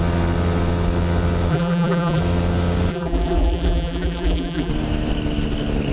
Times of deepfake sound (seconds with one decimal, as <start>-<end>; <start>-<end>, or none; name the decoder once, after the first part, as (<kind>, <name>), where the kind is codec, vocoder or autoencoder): 1.5-2.2 (vocoder, BigVGAN v2); 2.9-4.7